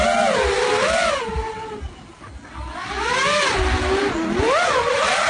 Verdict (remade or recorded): recorded